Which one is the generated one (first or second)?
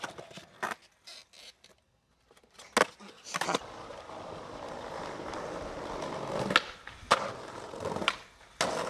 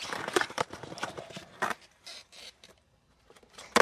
second